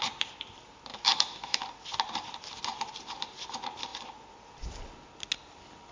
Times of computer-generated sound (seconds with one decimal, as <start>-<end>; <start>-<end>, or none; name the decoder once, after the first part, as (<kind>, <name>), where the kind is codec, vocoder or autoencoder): 0.9-1.6 (autoencoder, DAC-VAE)